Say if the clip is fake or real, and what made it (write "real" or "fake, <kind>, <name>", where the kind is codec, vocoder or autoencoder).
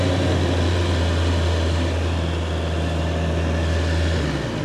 real